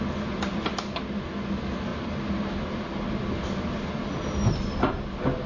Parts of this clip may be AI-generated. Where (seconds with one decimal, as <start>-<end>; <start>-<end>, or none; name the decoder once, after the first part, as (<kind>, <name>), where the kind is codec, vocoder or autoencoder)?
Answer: none